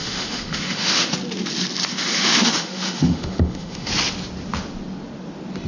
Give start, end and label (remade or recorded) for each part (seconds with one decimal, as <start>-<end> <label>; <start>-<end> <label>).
0.0-1.1 remade; 1.1-1.9 recorded; 1.9-3.9 remade; 3.9-5.7 recorded